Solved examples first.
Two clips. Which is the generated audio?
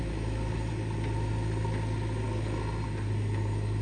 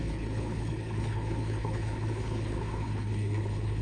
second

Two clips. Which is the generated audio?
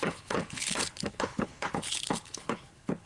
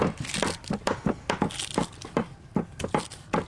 first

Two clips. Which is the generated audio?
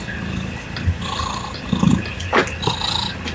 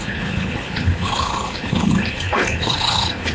second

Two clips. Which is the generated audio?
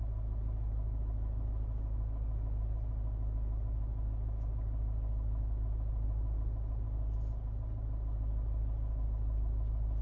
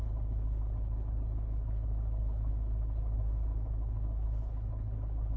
second